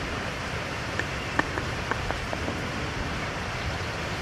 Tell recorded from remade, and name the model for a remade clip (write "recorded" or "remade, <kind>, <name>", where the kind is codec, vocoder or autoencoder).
recorded